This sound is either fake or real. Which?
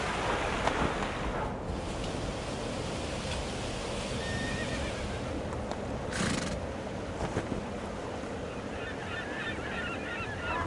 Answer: real